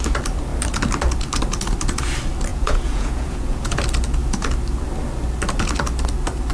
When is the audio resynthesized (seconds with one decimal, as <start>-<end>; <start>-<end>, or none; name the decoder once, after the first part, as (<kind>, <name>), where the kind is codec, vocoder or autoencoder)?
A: 2.5-3.8 (vocoder, Vocos)